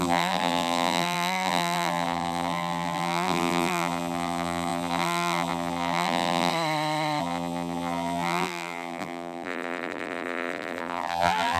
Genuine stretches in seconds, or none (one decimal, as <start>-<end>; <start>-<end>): 6.5-7.2